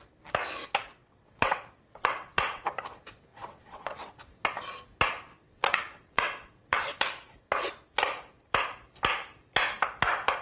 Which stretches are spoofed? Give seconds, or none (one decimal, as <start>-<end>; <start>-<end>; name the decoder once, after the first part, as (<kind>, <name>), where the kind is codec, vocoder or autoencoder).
1.0-2.6 (vocoder, WaveNeXt); 3.3-4.1; 5.3-7.0